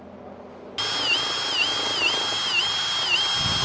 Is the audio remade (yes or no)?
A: no